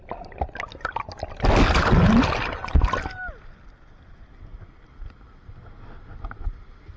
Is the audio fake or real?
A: real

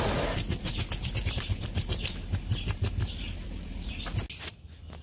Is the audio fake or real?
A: real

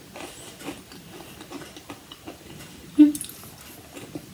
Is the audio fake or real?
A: real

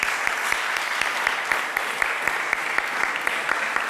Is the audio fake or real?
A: real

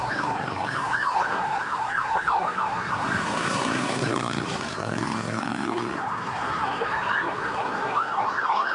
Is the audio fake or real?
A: fake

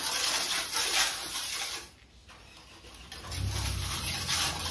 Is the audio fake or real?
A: real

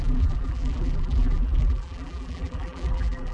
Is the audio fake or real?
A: fake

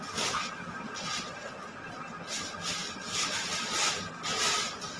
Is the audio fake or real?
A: real